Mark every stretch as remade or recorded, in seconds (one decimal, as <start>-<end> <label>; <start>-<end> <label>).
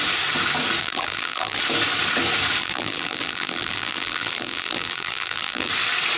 0.0-0.8 recorded; 0.8-1.6 remade; 1.6-2.6 recorded; 2.6-5.7 remade; 5.7-6.2 recorded